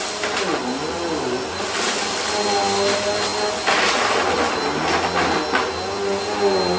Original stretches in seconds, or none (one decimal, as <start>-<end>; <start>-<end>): 0.0-6.8